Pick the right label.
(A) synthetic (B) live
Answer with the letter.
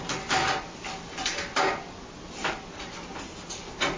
B